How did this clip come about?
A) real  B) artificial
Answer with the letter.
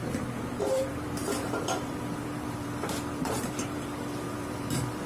B